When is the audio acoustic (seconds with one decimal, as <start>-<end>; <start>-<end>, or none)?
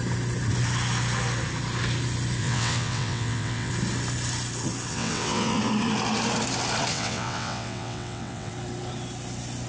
0.0-2.4; 3.7-4.9; 5.6-6.9; 8.5-9.7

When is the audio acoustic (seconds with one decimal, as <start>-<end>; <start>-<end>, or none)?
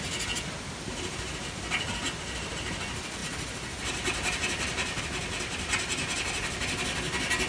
0.0-7.5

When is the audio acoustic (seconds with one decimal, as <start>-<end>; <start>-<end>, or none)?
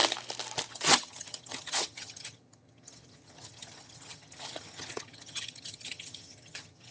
0.0-0.7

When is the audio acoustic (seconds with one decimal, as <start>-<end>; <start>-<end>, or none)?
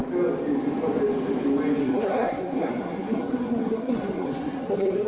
0.0-1.8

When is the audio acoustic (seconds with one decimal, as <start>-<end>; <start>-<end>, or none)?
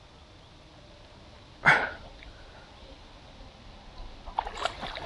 0.0-5.1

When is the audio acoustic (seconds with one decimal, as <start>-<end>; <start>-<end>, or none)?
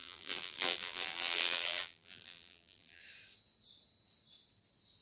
3.0-5.0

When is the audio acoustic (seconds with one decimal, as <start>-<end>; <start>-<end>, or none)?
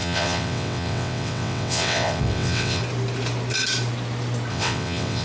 2.8-4.5